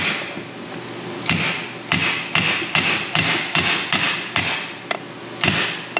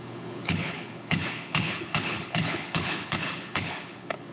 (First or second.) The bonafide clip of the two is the first